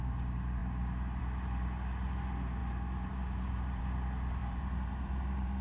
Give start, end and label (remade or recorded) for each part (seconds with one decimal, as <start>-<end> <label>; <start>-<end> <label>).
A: 0.0-2.6 recorded; 2.6-3.8 remade; 3.8-4.4 recorded; 4.4-5.6 remade